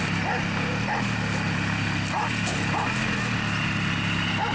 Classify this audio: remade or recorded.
recorded